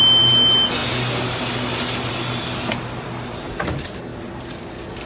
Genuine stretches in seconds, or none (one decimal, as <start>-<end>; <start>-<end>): 0.0-5.1